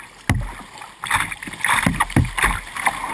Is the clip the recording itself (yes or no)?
yes